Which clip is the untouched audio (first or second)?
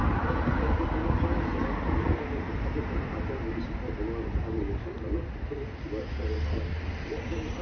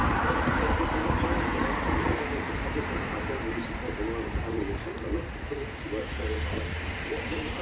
first